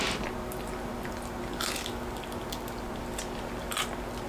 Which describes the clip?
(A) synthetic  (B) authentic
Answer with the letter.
B